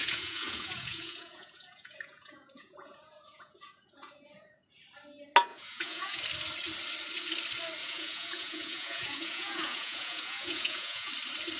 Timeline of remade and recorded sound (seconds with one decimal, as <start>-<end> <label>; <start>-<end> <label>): 0.0-4.8 remade; 4.8-5.5 recorded; 5.5-6.2 remade; 6.2-7.8 recorded; 7.8-11.1 remade; 11.1-11.6 recorded